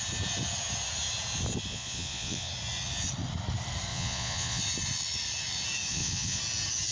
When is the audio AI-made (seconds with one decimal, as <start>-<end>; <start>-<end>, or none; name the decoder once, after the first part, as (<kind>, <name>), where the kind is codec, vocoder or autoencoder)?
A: 1.7-2.5 (vocoder, Vocos); 3.9-4.6; 5.9-6.4